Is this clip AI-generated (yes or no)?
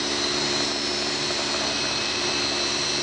no